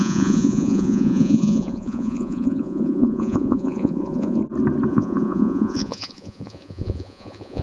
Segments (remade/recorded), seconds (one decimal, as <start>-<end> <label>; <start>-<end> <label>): 0.0-4.4 remade; 4.4-4.9 recorded; 4.9-7.6 remade